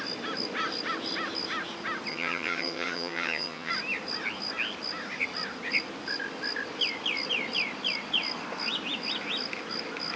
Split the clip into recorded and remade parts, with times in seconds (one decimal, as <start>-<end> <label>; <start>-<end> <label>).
0.0-2.1 recorded; 2.1-3.7 remade; 3.7-10.2 recorded